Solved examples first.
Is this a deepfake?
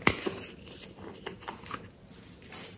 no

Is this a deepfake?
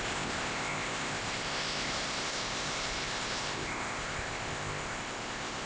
yes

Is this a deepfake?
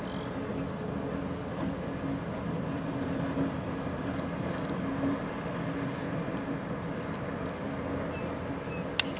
no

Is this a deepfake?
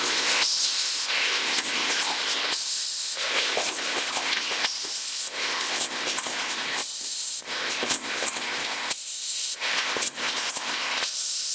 yes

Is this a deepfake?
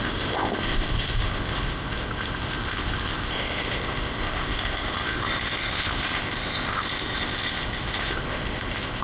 yes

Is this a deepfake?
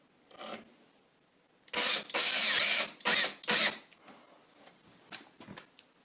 no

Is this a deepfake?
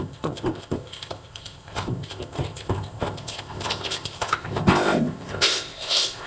yes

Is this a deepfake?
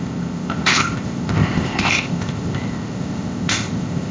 yes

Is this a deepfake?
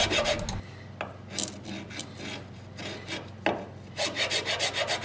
no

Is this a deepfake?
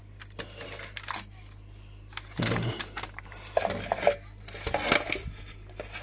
no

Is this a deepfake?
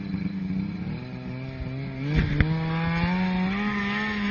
no